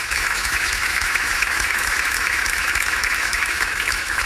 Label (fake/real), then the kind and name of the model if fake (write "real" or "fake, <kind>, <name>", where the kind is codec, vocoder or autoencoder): fake, autoencoder, DAC-VAE